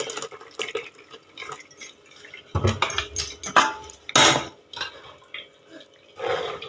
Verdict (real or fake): real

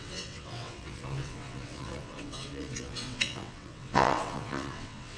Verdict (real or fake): fake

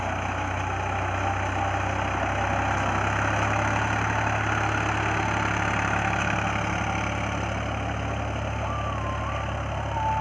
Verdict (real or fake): real